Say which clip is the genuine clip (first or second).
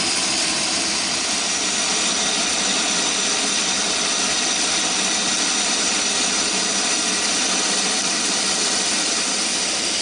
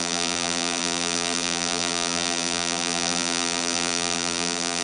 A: first